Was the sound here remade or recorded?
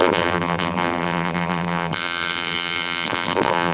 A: remade